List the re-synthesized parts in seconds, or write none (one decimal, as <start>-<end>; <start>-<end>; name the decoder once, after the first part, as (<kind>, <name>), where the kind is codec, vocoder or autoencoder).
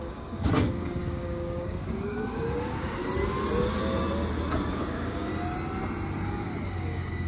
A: 0.0-3.0 (codec, DAC); 4.7-5.3; 6.3-7.3